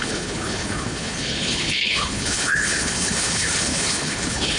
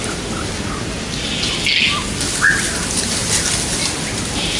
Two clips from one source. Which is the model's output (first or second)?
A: first